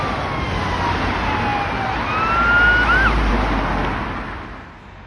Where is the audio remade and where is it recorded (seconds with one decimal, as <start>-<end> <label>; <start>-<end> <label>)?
0.0-5.1 recorded